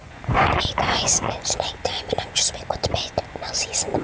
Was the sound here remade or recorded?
remade